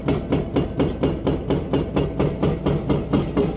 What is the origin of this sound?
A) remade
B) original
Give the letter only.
B